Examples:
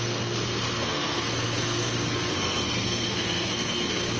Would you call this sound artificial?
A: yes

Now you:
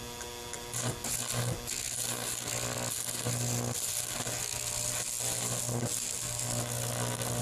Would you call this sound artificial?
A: no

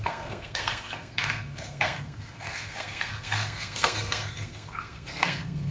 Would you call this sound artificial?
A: yes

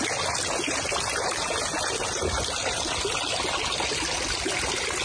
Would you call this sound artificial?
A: no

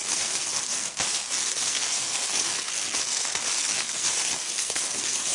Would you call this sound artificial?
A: yes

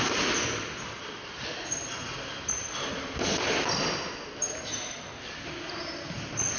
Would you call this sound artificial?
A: no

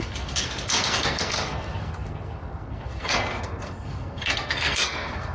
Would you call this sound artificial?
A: yes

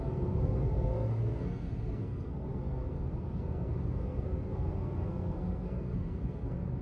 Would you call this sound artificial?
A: yes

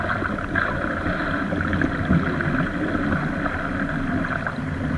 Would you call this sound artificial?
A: no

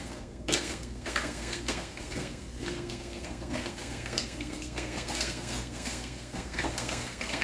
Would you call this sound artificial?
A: yes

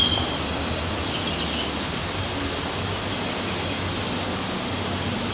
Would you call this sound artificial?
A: no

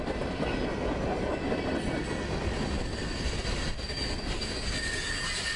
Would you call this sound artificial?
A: no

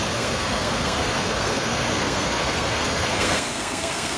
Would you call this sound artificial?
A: yes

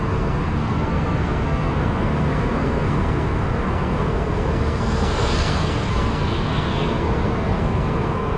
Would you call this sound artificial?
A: yes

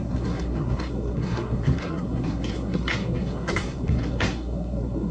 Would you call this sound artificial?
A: yes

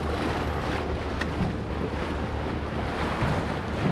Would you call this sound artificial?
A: no